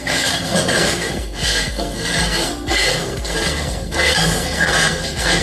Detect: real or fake fake